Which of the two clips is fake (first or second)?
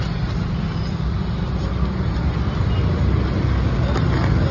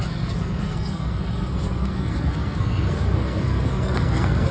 second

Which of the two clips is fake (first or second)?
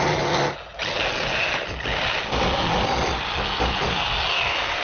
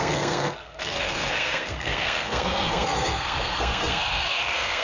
second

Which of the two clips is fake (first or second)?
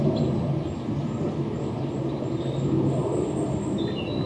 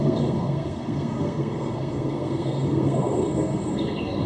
second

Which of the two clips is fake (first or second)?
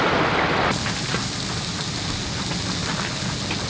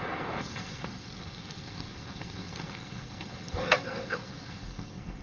second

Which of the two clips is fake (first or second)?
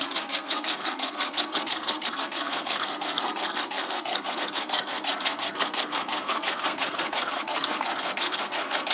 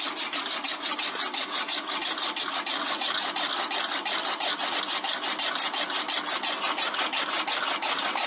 first